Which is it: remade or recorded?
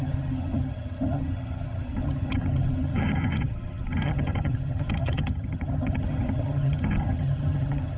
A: remade